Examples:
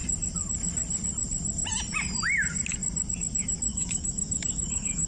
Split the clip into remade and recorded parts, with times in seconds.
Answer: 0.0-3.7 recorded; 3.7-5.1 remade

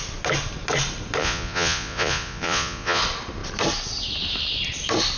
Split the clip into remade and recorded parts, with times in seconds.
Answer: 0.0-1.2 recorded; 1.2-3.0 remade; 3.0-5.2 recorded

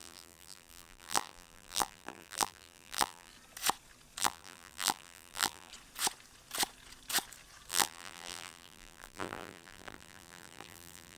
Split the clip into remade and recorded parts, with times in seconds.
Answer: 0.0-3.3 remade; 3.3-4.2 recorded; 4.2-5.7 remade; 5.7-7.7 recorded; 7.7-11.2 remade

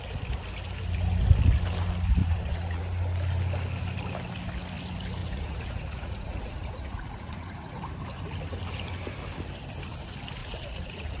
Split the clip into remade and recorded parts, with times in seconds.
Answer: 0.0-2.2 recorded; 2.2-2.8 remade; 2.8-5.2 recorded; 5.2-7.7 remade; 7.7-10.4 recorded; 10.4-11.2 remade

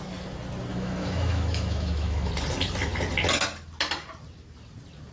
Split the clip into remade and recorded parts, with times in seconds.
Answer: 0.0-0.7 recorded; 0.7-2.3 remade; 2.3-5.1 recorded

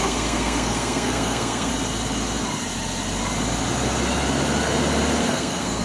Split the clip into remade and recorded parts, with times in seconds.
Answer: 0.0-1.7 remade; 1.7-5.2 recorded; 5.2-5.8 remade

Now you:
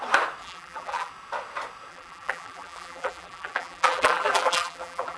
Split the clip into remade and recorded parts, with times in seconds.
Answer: 0.0-0.4 recorded; 0.4-1.1 remade; 1.1-1.9 recorded; 1.9-5.2 remade

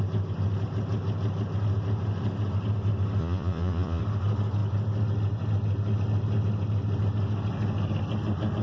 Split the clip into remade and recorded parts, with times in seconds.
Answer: 0.0-3.2 recorded; 3.2-4.0 remade; 4.0-8.6 recorded